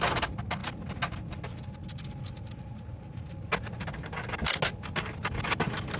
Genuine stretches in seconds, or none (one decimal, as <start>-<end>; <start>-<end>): 0.0-6.0